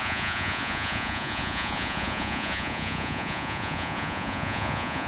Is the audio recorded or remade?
remade